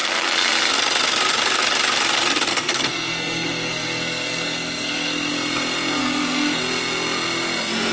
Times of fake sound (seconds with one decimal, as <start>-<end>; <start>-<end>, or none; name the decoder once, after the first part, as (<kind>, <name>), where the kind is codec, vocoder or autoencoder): 0.0-0.5 (codec, SNAC); 2.5-5.3; 6.0-6.6